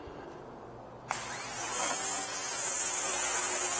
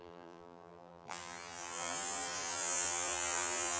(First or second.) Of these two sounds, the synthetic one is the second